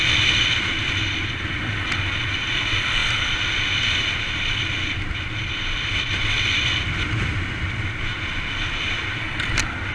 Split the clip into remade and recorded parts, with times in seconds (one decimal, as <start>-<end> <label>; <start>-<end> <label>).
0.0-9.9 recorded